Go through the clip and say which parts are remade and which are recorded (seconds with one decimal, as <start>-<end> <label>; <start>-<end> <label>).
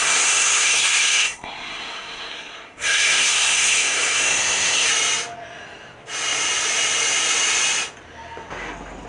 0.0-4.9 remade; 4.9-9.1 recorded